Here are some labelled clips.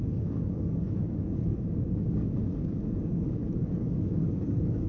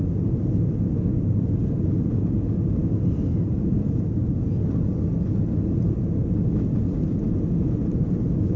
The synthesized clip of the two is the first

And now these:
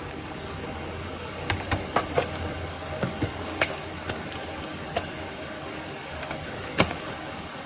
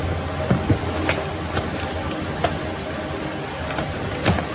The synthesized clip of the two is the first